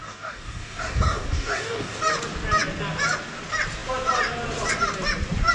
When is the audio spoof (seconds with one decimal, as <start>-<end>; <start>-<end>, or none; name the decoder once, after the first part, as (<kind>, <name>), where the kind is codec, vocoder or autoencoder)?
0.0-2.0 (codec, DAC)